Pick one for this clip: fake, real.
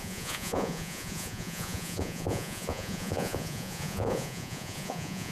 fake